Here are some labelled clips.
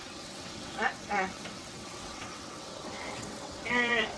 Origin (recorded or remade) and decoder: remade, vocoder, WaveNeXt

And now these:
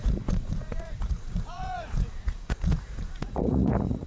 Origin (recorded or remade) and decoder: remade, vocoder, Vocos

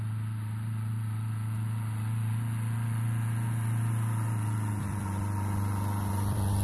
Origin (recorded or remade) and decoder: recorded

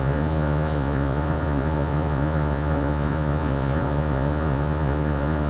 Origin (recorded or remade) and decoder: remade, vocoder, Vocos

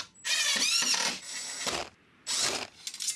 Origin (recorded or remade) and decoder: recorded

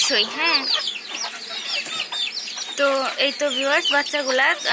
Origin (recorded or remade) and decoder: recorded